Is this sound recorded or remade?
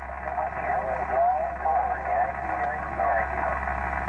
recorded